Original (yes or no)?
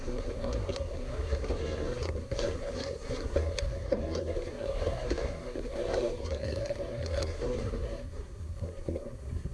no